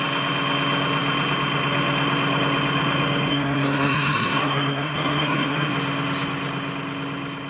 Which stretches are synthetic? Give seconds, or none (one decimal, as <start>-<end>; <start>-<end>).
3.3-5.7